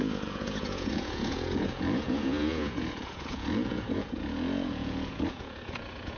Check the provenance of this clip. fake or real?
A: fake